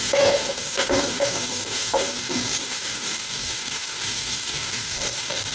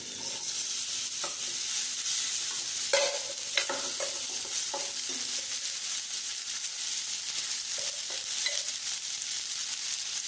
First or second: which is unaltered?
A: second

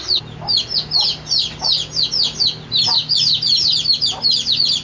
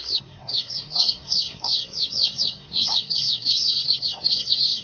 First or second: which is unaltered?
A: first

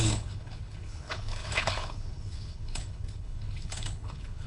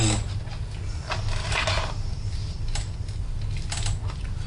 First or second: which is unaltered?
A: second